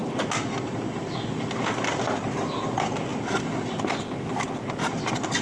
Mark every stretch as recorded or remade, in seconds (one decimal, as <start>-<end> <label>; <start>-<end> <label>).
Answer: 0.0-5.4 recorded